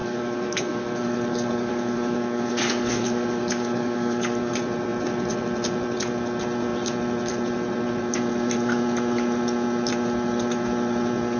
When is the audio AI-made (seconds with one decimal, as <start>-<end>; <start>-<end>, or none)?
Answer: 0.0-4.5